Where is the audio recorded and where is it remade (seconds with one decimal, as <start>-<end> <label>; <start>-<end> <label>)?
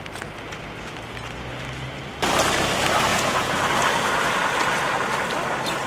0.0-3.1 recorded; 3.1-3.6 remade; 3.6-5.9 recorded